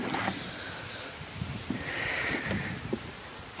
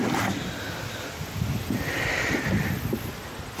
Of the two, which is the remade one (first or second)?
first